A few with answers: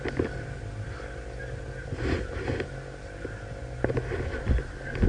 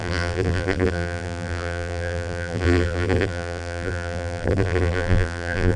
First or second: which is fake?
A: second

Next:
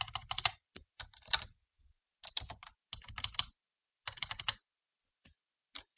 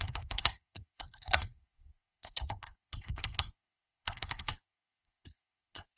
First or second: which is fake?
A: second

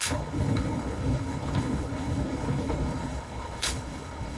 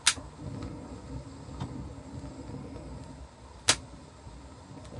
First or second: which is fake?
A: first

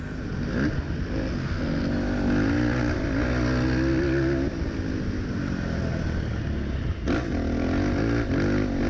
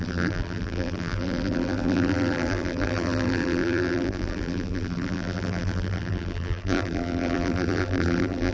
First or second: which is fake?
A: second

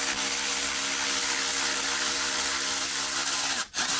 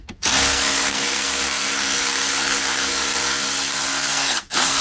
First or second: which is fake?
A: second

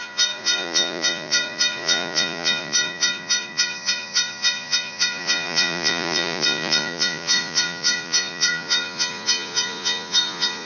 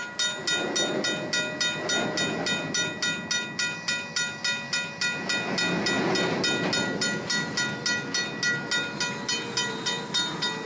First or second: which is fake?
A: first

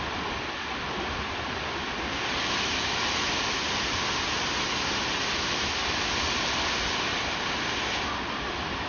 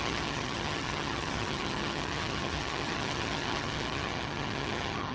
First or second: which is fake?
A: second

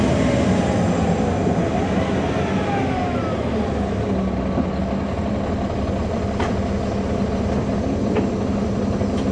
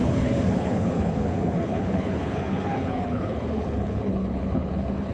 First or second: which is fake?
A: second